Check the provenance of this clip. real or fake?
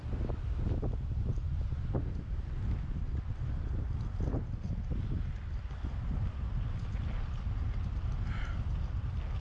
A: real